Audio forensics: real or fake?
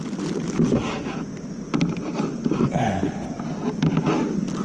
real